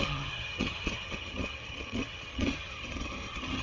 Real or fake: fake